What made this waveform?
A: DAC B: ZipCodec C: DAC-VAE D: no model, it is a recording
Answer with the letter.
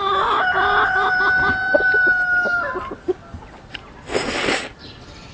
D